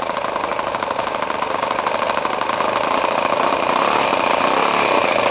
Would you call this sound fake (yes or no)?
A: no